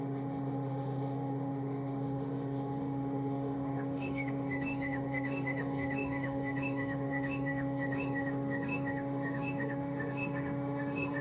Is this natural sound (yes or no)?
no